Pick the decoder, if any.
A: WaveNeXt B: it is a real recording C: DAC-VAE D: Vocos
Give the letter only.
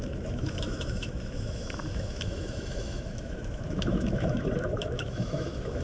C